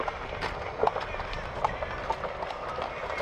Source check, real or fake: real